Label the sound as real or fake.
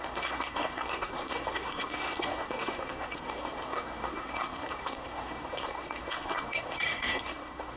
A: fake